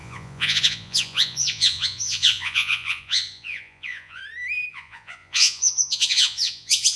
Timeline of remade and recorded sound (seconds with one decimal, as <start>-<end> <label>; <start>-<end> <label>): 0.0-4.2 remade; 4.2-4.7 recorded; 4.7-7.0 remade